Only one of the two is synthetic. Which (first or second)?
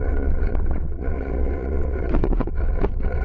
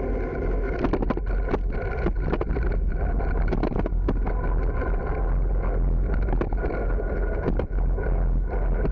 first